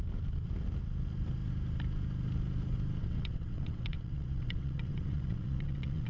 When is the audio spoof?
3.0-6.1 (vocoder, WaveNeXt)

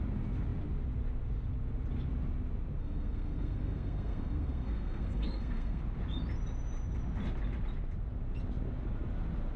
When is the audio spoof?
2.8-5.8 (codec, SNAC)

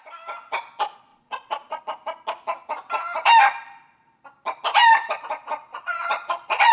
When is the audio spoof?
1.1-1.8 (vocoder, Vocos); 5.7-6.7

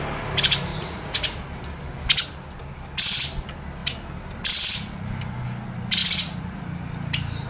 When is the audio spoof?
0.7-1.4 (vocoder, Vocos); 6.0-6.6